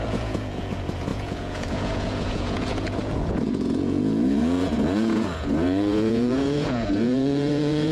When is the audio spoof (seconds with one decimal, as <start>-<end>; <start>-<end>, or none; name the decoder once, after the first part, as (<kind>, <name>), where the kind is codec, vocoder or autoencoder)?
0.0-7.9 (vocoder, Vocos)